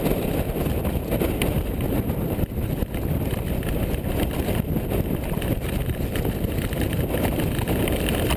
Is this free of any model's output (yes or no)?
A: yes